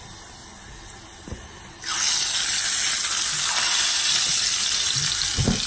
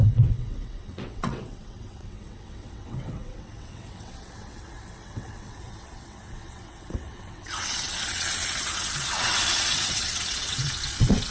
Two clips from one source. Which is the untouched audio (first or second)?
first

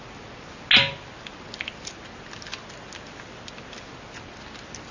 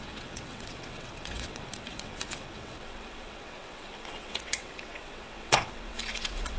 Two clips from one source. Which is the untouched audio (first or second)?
first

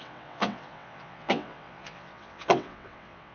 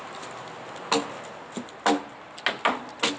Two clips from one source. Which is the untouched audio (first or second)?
second